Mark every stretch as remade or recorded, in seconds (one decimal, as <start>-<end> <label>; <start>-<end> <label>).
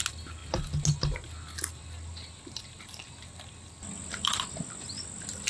0.0-5.5 recorded